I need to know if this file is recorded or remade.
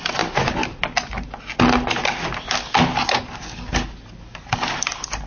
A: recorded